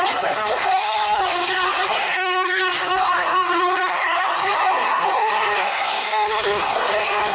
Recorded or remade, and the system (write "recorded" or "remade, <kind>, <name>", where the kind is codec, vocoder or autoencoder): remade, codec, SNAC